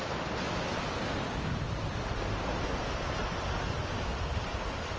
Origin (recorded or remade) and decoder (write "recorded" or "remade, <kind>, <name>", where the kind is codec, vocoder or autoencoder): recorded